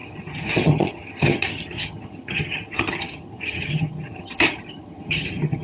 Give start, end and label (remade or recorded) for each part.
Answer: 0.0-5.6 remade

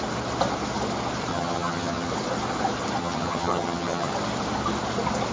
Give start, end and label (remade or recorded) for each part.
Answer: 0.0-1.3 recorded; 1.3-2.1 remade; 2.1-3.0 recorded; 3.0-4.1 remade; 4.1-5.3 recorded